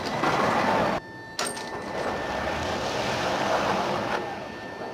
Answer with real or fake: real